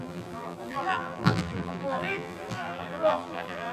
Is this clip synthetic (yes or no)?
yes